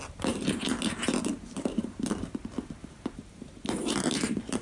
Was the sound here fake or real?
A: fake